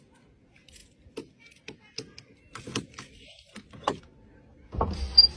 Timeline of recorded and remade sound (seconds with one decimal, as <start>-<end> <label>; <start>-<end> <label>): 0.0-5.4 recorded